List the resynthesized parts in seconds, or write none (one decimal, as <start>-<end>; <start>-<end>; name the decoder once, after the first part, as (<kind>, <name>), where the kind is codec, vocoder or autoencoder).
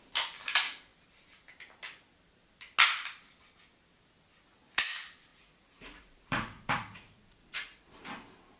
5.3-7.9 (vocoder, Vocos)